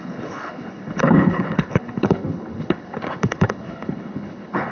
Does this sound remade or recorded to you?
remade